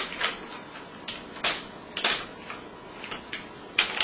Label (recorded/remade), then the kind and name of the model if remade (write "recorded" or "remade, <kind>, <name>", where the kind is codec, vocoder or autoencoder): recorded